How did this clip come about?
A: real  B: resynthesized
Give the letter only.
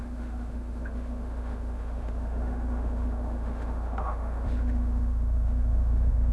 B